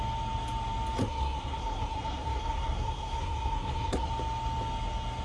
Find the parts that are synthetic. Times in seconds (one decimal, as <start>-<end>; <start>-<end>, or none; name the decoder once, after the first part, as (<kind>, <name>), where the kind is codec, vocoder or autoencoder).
1.0-4.1 (codec, SNAC)